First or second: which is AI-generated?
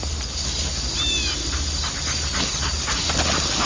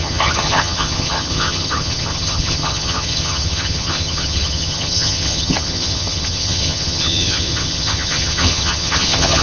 second